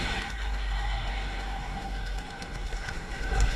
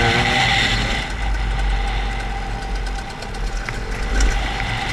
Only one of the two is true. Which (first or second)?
second